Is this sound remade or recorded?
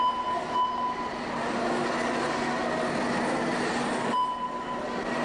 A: recorded